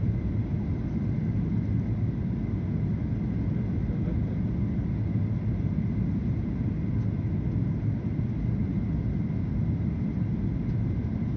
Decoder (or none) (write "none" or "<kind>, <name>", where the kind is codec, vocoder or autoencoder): none